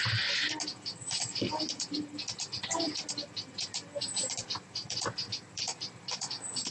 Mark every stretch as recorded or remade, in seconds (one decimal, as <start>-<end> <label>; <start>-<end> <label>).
0.0-0.7 recorded; 0.7-1.5 remade; 1.5-4.1 recorded; 4.1-6.7 remade